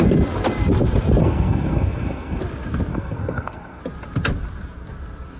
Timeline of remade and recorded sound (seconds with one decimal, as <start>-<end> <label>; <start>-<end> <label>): 0.0-1.2 recorded; 1.2-2.4 remade; 2.4-2.9 recorded; 2.9-3.8 remade; 3.8-5.4 recorded

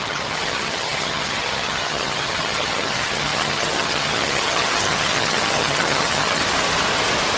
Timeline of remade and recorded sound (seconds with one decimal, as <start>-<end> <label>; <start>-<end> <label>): 0.0-6.4 remade; 6.4-7.4 recorded

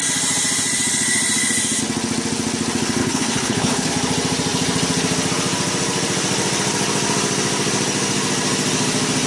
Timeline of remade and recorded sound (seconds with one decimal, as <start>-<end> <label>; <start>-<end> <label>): 0.0-3.0 recorded; 3.0-3.9 remade; 3.9-9.3 recorded

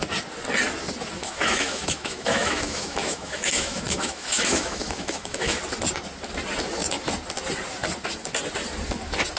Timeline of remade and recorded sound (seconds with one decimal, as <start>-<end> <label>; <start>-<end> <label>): 0.0-1.2 recorded; 1.2-5.6 remade; 5.6-9.4 recorded

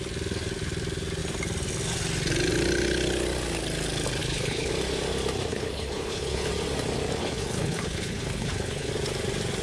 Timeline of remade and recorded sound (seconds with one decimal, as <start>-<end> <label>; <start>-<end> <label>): 0.0-4.2 recorded; 4.2-4.7 remade; 4.7-5.5 recorded; 5.5-6.5 remade; 6.5-7.2 recorded; 7.2-8.9 remade; 8.9-9.6 recorded

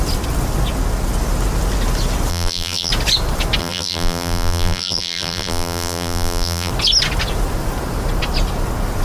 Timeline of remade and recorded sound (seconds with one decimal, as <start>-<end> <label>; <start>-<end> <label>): 0.0-2.3 recorded; 2.3-2.9 remade; 2.9-3.6 recorded; 3.6-6.7 remade; 6.7-9.0 recorded

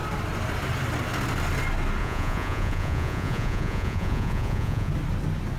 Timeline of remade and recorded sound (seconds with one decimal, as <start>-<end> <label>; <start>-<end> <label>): 0.0-2.0 recorded; 2.0-4.9 remade; 4.9-5.6 recorded

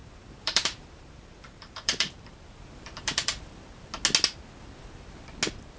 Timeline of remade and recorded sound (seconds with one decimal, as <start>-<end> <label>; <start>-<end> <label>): 0.0-3.5 remade; 3.5-5.8 recorded